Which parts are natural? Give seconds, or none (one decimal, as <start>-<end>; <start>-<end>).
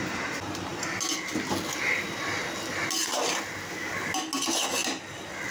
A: 0.0-5.5